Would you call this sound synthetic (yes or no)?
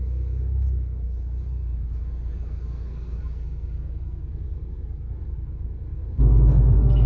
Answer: yes